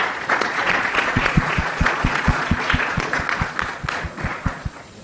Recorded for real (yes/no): no